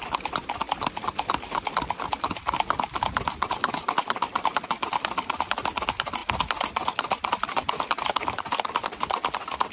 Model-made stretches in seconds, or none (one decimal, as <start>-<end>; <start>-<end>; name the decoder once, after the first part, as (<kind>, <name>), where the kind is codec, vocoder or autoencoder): none